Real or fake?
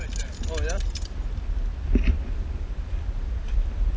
real